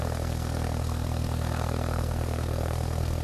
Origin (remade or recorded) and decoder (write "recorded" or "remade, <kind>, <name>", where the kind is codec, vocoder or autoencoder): remade, codec, SNAC